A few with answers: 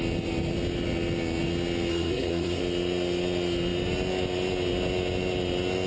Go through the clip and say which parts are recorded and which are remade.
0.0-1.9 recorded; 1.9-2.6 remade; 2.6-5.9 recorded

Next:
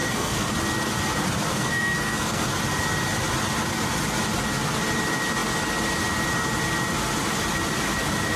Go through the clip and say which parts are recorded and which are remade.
0.0-0.5 remade; 0.5-1.5 recorded; 1.5-2.4 remade; 2.4-8.4 recorded